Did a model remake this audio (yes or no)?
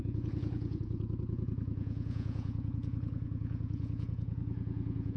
yes